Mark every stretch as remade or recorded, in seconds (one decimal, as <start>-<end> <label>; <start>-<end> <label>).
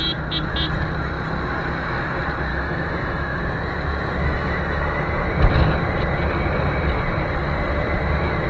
0.0-2.5 recorded; 2.5-3.4 remade; 3.4-4.2 recorded; 4.2-5.3 remade; 5.3-8.5 recorded